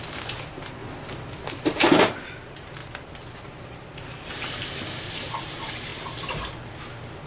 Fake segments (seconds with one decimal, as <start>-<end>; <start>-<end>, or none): 0.0-0.8; 1.5-2.8; 3.7-5.9